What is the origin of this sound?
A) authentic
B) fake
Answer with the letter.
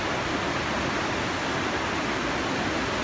A